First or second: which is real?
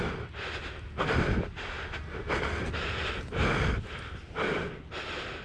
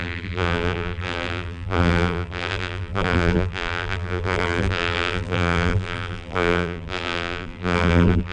first